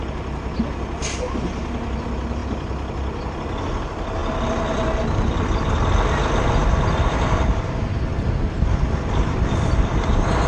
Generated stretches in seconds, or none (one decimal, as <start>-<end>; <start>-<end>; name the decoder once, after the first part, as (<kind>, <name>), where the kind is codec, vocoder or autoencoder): none